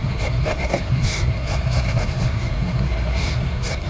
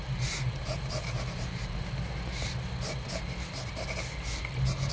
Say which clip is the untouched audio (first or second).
second